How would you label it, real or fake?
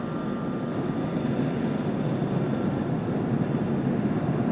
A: real